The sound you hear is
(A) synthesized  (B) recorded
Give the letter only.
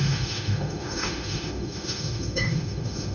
A